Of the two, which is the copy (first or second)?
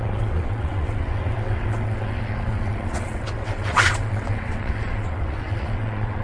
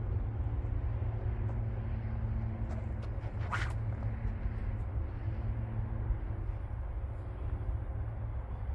first